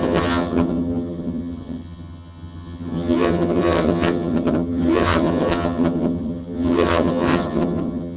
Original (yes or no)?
no